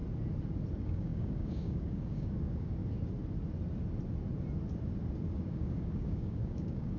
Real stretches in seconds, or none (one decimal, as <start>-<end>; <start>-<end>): 0.0-0.7; 2.8-5.3